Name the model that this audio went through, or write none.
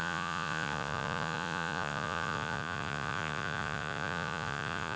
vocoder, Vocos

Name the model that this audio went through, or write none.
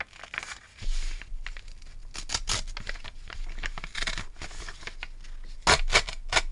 none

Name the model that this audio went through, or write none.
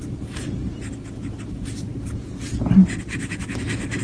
vocoder, BigVGAN v2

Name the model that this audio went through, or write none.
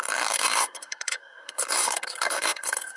codec, SNAC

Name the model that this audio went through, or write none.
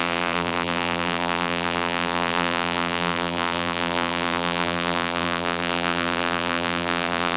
vocoder, BigVGAN v2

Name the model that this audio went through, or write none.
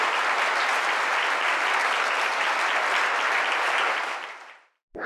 none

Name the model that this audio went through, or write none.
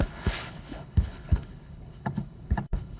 codec, HILCodec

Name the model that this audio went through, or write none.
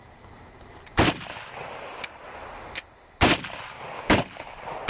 none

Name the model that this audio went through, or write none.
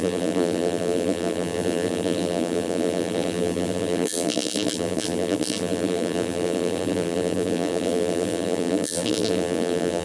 vocoder, BigVGAN v2